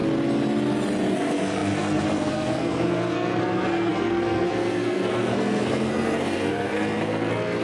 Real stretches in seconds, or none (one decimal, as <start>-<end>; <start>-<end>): 0.0-1.1